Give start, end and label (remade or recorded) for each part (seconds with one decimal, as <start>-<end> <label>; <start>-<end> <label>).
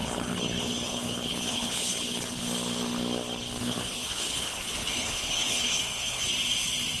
0.0-2.4 remade; 2.4-3.6 recorded; 3.6-6.3 remade; 6.3-7.0 recorded